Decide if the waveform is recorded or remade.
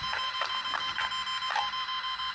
recorded